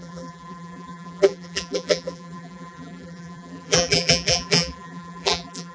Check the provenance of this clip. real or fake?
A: fake